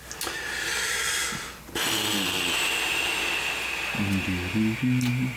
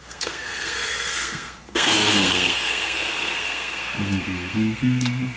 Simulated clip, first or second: second